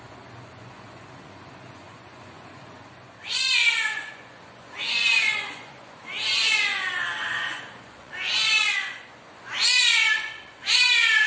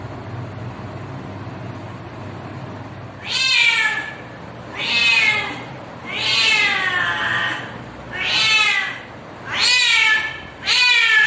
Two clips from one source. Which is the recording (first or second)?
second